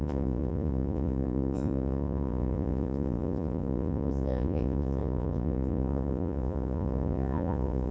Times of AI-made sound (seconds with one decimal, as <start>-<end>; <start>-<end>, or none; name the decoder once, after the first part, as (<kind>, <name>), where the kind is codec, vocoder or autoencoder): 0.0-7.9 (vocoder, Vocos)

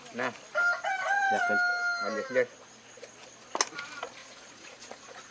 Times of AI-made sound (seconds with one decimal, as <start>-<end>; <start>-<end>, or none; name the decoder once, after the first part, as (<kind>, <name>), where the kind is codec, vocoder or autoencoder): 4.2-5.3 (vocoder, Vocos)